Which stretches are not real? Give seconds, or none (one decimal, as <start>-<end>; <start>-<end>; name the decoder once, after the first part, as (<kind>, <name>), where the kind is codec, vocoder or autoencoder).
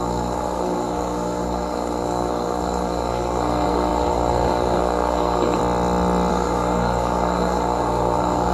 0.0-5.6 (codec, SNAC); 6.3-8.5